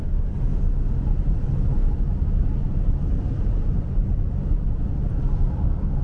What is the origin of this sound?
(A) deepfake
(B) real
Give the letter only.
B